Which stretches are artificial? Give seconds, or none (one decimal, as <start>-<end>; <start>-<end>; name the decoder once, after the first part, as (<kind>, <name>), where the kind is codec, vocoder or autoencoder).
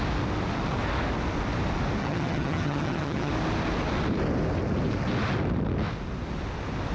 2.0-3.3 (vocoder, HiFi-GAN)